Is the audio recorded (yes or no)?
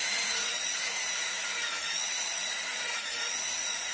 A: no